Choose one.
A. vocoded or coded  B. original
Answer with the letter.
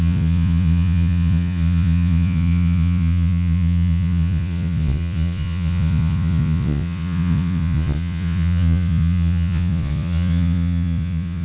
A